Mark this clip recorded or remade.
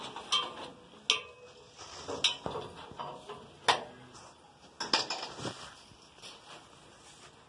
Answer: recorded